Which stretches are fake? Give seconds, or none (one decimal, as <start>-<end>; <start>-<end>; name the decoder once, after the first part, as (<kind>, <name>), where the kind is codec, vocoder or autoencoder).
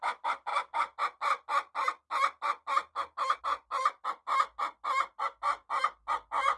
none